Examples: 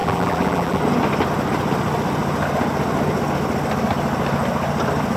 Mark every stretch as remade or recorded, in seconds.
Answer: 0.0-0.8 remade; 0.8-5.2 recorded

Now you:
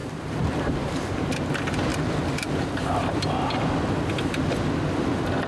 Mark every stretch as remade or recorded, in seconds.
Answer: 0.0-1.4 remade; 1.4-1.9 recorded; 1.9-3.8 remade; 3.8-5.5 recorded

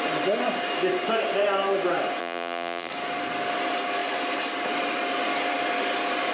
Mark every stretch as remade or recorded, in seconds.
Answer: 0.0-2.2 recorded; 2.2-2.9 remade; 2.9-6.3 recorded

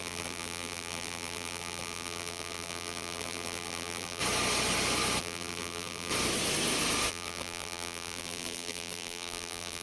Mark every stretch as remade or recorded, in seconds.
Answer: 0.0-4.2 remade; 4.2-5.2 recorded; 5.2-6.1 remade; 6.1-7.1 recorded; 7.1-9.8 remade

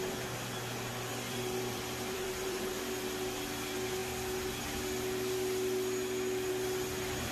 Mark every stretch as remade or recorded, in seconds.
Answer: 0.0-0.9 recorded; 0.9-2.7 remade; 2.7-7.3 recorded

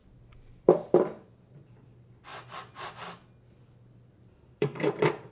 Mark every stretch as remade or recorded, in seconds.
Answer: 0.0-2.3 remade; 2.3-4.6 recorded; 4.6-5.3 remade